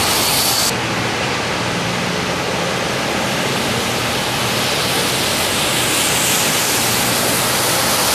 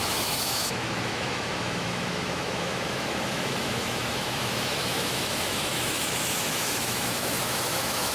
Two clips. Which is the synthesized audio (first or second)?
second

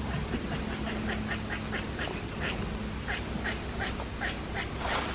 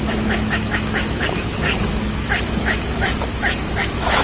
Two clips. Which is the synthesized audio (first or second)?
second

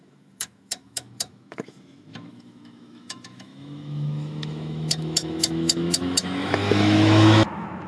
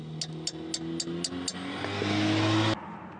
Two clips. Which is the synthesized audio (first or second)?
first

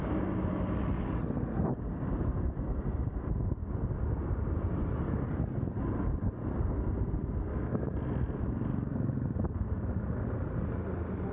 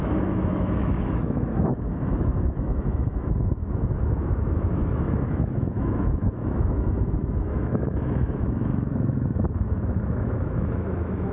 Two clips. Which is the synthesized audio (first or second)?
second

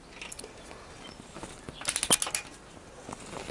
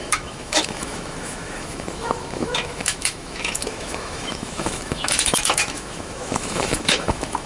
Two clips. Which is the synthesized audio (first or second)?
second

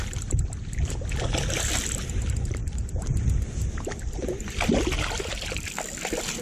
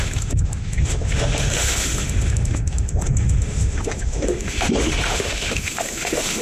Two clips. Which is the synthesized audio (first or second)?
second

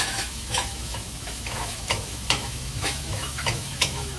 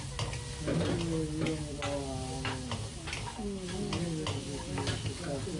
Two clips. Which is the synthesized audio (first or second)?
first